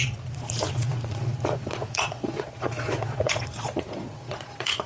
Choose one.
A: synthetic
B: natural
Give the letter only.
A